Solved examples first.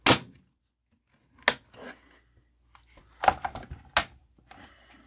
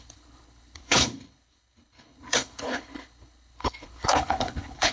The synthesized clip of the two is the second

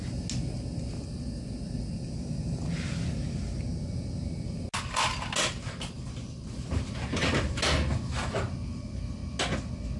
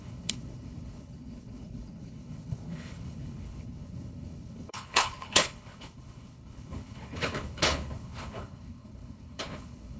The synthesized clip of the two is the second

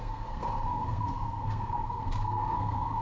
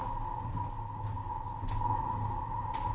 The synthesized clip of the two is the first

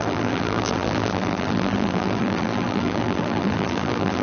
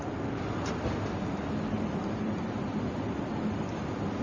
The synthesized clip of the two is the first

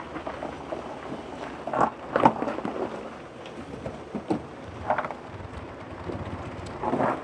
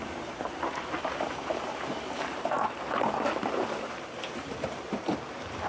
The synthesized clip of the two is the second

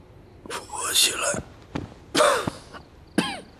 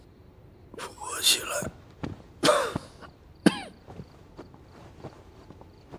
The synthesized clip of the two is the second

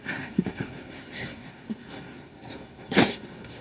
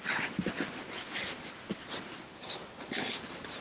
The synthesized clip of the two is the first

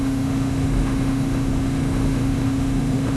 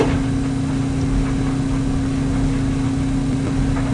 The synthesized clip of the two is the first